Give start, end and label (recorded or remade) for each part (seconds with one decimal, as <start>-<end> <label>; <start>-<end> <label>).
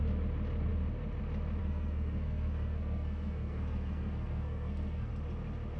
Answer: 0.0-1.6 recorded; 1.6-5.1 remade; 5.1-5.8 recorded